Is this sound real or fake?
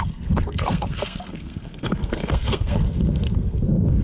fake